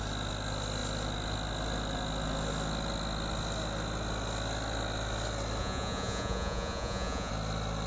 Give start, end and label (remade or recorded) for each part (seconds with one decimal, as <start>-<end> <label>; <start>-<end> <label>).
0.0-5.6 recorded; 5.6-7.3 remade; 7.3-7.9 recorded